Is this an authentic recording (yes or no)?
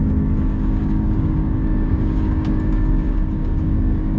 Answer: no